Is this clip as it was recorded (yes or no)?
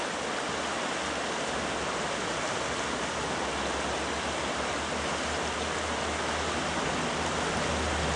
yes